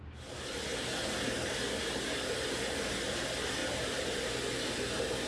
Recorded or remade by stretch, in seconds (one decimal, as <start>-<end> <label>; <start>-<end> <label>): 0.0-5.3 recorded